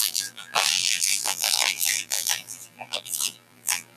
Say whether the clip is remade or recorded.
remade